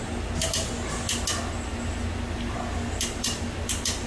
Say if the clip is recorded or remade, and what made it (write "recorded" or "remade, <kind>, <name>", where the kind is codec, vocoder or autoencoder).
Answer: recorded